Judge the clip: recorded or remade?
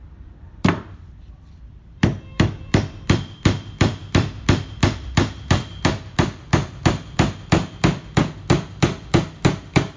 remade